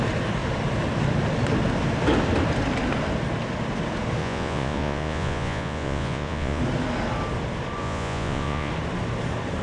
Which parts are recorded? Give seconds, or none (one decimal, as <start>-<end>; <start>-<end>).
0.0-4.2; 6.6-7.8; 8.7-9.6